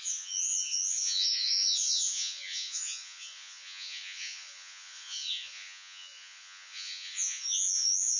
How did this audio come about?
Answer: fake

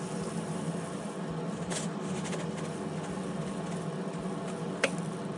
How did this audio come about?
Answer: real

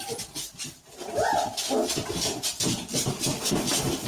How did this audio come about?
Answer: real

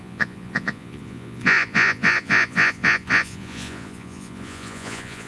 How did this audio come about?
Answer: fake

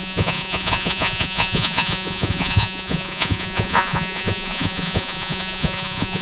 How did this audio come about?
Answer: fake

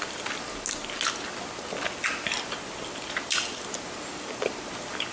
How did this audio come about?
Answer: real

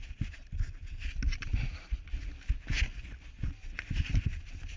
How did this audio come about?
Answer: real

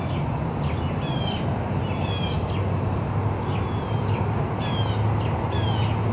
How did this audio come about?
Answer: real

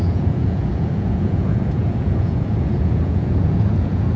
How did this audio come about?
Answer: fake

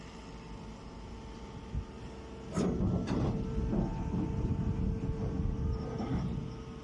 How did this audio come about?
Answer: real